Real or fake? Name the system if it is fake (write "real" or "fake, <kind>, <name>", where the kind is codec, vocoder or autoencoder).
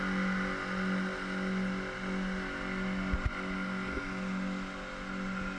real